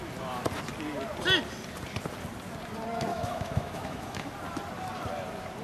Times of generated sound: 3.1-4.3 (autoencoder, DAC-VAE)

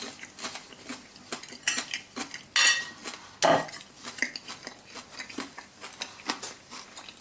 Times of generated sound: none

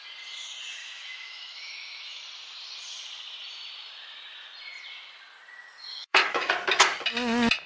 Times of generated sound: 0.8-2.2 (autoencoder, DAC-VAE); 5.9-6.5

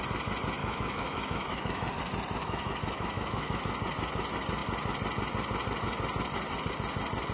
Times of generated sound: 0.6-1.9 (autoencoder, DAC-VAE); 2.4-3.6